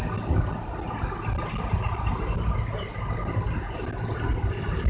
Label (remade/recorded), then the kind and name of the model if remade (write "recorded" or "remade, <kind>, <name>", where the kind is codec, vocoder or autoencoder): recorded